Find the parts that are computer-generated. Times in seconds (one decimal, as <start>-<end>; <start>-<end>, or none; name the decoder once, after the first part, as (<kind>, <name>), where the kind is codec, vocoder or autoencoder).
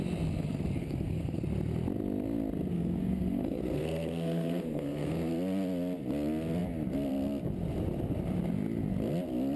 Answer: 0.8-1.4 (codec, SNAC); 2.7-5.3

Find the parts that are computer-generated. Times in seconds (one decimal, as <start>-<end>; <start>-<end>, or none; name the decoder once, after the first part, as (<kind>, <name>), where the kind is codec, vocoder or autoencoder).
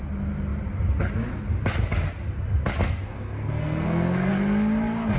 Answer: 2.8-4.3 (codec, SNAC)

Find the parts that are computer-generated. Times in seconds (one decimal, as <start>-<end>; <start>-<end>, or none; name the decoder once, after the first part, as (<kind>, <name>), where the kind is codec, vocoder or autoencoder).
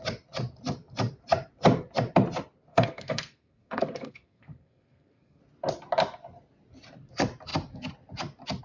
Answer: 2.7-5.4 (codec, SNAC)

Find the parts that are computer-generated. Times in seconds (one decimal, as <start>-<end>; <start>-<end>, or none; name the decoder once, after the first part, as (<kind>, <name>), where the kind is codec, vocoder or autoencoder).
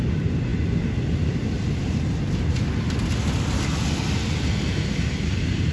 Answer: none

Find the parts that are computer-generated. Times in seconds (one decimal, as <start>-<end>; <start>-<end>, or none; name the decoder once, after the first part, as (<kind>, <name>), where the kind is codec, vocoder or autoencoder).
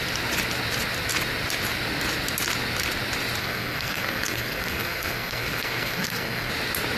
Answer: 3.4-6.5 (codec, SNAC)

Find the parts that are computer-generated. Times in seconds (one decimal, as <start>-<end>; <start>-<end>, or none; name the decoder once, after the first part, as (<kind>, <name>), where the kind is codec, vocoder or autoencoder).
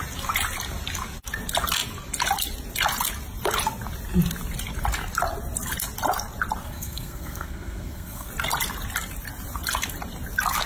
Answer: 6.6-8.3 (codec, SNAC)